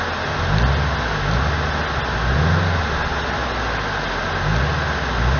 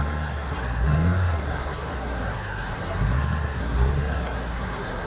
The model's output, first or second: second